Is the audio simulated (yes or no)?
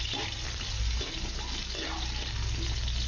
no